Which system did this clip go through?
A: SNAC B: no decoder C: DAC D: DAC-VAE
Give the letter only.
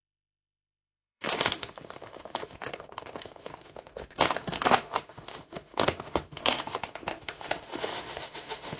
D